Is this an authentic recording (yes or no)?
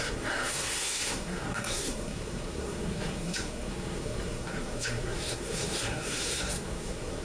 no